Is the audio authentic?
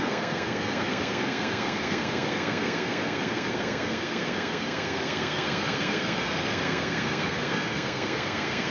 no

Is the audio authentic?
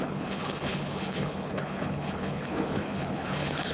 no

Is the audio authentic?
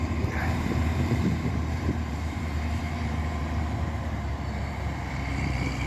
no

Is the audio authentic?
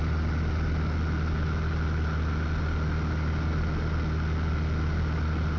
yes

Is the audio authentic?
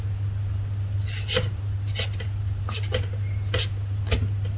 yes